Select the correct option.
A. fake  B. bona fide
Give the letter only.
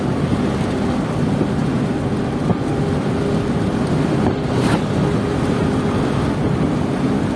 B